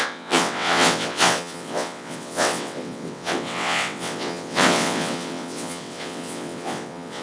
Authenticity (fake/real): fake